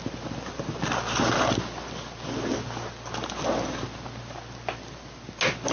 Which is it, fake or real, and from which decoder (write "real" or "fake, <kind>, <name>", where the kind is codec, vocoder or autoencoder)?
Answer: real